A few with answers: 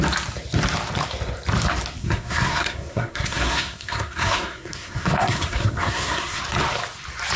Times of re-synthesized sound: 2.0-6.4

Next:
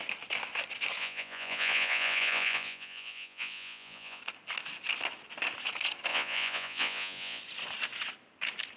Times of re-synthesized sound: 1.0-4.2; 6.1-7.4

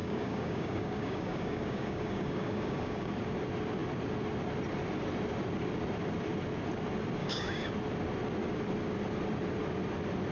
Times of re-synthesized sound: 0.0-3.1; 7.2-7.7

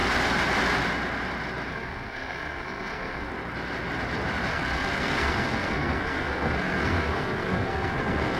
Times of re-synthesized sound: 1.7-3.3; 4.5-8.4